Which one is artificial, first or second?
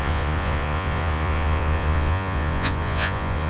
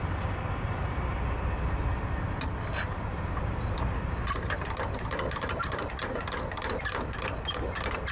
first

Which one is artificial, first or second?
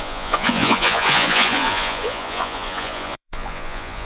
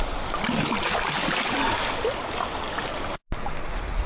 first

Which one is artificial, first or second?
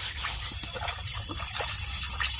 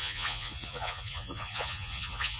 second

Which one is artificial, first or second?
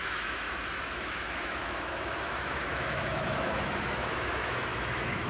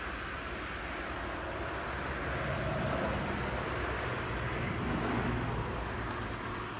first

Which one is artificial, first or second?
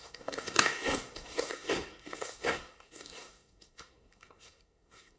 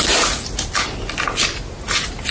first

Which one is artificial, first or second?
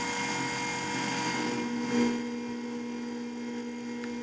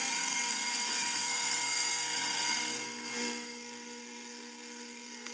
second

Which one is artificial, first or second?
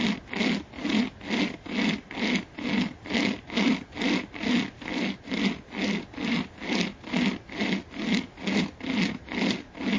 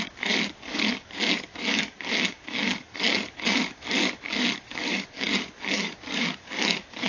second